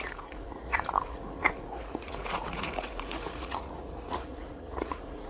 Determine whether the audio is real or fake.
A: fake